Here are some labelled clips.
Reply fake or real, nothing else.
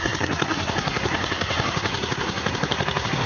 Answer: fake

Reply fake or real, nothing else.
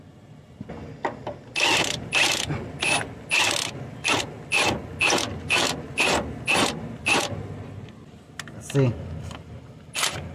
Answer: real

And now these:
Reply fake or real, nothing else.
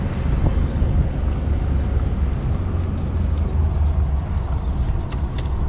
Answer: real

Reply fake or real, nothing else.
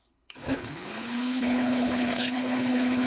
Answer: fake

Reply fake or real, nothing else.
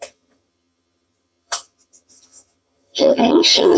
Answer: fake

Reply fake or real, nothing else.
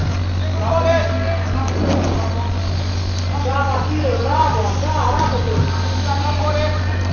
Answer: real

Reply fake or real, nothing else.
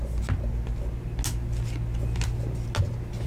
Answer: real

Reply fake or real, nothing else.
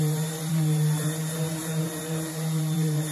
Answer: fake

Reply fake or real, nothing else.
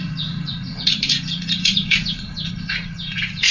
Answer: fake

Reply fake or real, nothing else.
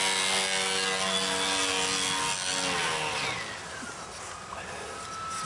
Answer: real